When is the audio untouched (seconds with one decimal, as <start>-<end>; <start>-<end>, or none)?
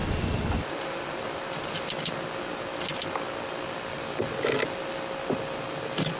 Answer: 0.0-6.2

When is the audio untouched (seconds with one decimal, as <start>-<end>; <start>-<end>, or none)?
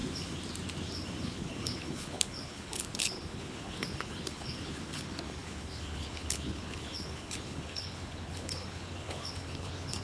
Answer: 0.0-1.2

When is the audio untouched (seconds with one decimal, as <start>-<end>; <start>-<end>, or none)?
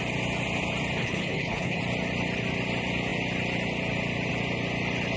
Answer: 0.0-1.0; 1.8-5.2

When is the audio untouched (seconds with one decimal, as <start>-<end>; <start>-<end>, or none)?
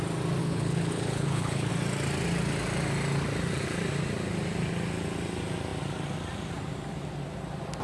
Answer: 0.0-0.4; 1.7-7.8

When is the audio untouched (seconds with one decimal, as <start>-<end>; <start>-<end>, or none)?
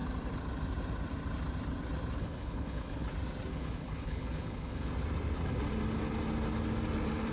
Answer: 0.0-2.2; 3.1-3.5; 4.9-7.3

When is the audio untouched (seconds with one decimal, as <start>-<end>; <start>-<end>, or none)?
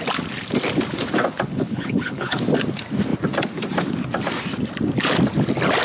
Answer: 0.0-1.5; 2.4-5.8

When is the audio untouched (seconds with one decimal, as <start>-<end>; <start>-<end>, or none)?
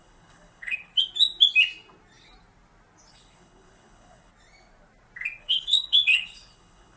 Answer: 0.9-3.1; 4.3-5.4